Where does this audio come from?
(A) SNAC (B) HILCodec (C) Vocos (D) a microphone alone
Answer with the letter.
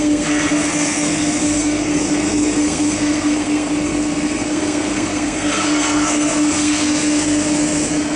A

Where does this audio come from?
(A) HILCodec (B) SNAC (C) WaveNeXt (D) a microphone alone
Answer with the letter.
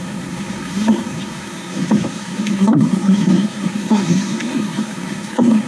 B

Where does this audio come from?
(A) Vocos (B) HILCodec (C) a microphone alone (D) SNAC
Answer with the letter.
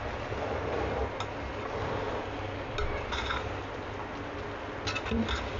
C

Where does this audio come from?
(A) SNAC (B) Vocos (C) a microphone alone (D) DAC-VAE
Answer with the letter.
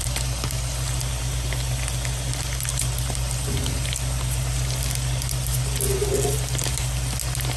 C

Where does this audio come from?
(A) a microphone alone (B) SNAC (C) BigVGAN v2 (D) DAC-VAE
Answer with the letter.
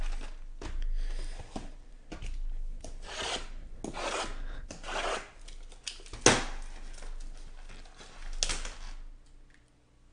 A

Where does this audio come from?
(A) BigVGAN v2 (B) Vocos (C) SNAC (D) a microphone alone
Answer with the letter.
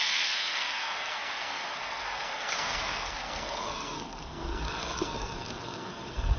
C